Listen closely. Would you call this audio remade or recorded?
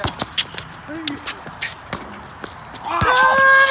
recorded